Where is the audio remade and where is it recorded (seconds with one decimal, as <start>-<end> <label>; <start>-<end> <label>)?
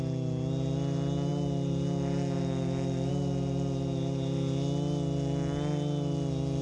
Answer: 0.0-6.6 recorded